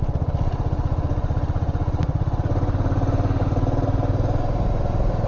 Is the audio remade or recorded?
recorded